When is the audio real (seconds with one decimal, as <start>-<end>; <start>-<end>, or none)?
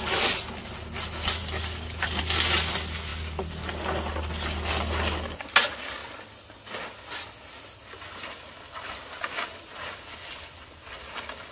0.0-11.5